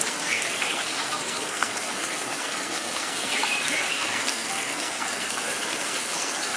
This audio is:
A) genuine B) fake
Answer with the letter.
B